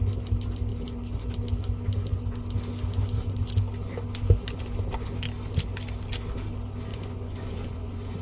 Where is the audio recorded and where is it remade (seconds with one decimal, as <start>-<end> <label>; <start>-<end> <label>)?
0.0-6.9 recorded; 6.9-8.2 remade